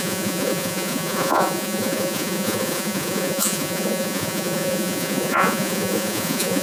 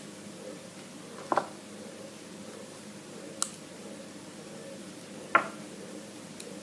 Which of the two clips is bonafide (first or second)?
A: second